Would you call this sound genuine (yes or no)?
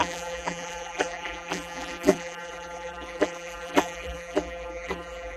no